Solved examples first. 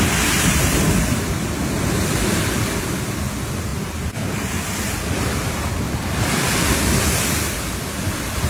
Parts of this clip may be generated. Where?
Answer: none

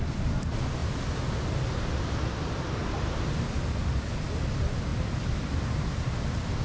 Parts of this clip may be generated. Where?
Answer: 4.9-5.6 (vocoder, BigVGAN v2)

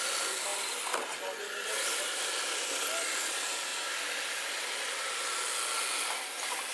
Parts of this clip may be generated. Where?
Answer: none

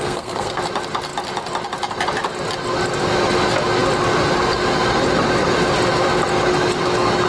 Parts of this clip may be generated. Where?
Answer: 0.0-0.6 (codec, SNAC)

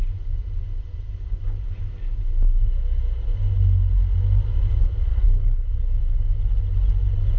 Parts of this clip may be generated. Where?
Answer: 5.1-5.7 (codec, HILCodec)